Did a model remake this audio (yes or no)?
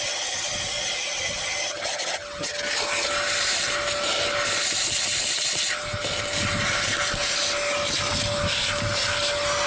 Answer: no